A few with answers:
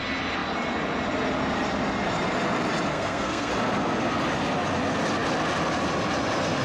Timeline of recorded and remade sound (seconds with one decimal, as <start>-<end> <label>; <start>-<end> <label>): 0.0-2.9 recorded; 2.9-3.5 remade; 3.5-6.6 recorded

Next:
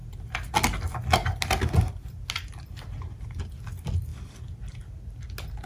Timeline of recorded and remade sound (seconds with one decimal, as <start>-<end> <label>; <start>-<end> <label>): 0.0-5.7 recorded

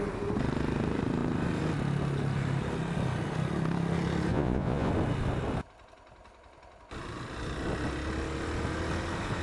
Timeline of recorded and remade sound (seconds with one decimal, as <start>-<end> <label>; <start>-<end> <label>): 0.0-4.3 recorded; 4.3-4.9 remade; 4.9-9.4 recorded

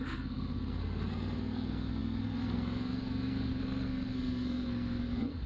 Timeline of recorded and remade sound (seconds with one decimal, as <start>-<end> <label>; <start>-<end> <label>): 0.0-5.5 remade

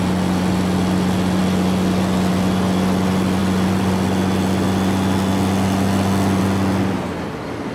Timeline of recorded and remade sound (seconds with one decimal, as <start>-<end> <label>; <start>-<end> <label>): 0.0-7.7 recorded